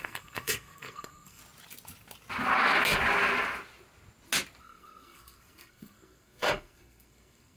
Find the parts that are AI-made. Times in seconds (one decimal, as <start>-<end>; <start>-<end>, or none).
0.0-1.4; 4.6-7.6